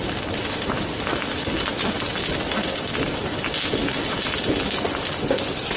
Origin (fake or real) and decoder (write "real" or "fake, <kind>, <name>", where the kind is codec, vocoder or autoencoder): real